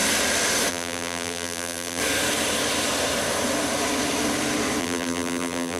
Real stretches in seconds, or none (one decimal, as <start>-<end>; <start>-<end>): 0.0-0.7; 2.0-4.8